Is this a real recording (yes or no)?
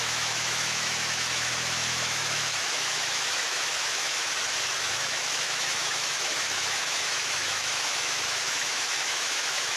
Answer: no